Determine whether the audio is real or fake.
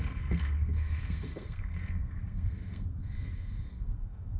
fake